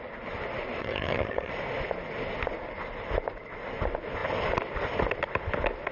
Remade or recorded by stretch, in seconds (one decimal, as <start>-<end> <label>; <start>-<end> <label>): 0.0-0.8 recorded; 0.8-1.5 remade; 1.5-5.9 recorded